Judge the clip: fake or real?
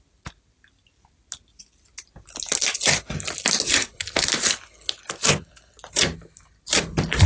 real